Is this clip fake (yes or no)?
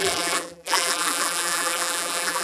yes